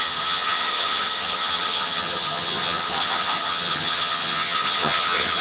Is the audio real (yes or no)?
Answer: no